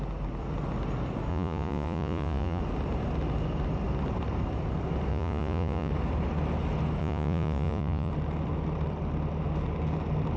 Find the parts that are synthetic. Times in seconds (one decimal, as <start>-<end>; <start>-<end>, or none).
1.3-2.6; 5.1-5.9; 7.0-8.1